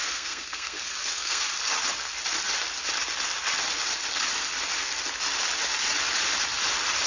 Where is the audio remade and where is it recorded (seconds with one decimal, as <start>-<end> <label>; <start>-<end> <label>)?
0.0-1.4 remade; 1.4-7.1 recorded